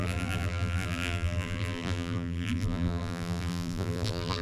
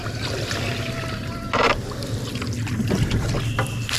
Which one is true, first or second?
second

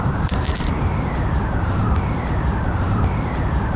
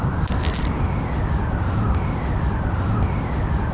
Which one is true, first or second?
second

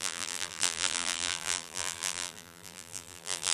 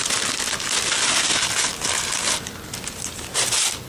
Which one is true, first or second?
second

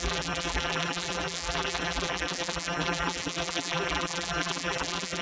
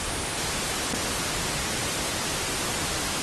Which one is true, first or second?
second